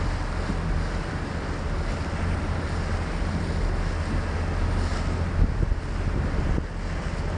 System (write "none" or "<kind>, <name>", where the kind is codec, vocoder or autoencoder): none